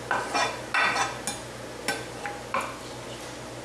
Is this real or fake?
real